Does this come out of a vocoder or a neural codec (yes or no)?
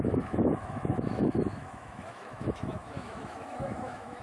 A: yes